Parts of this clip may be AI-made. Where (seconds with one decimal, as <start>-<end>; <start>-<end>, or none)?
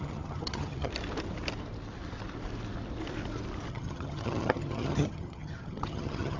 0.0-0.9; 3.7-6.4